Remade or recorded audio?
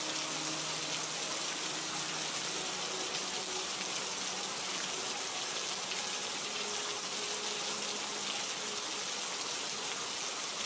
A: recorded